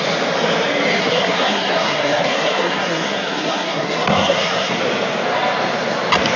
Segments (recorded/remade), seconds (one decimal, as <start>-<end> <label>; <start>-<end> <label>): 0.0-1.0 recorded; 1.0-4.8 remade; 4.8-6.4 recorded